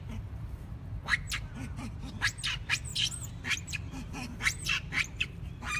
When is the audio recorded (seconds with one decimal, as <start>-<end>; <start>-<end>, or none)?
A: 1.0-1.7